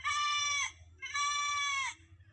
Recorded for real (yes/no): yes